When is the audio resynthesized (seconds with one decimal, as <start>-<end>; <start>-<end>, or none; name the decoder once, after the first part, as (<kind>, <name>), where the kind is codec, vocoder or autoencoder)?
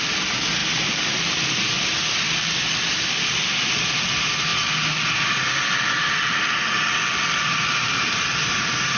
none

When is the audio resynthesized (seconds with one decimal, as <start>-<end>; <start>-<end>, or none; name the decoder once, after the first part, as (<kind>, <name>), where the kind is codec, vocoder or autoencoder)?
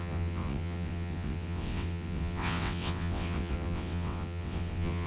0.0-5.1 (vocoder, WaveNeXt)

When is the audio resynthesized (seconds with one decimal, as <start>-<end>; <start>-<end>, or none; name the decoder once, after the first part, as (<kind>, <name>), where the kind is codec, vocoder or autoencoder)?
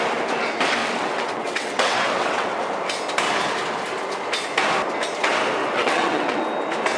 0.8-2.6 (vocoder, WaveNeXt); 5.6-6.4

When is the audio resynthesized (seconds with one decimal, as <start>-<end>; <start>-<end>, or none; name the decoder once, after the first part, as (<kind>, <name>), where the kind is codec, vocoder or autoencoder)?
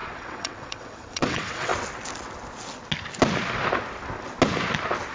0.0-1.7 (vocoder, WaveNeXt)